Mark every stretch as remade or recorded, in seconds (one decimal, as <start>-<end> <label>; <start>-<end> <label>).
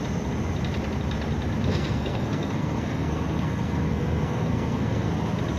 0.0-1.7 recorded; 1.7-5.1 remade; 5.1-5.6 recorded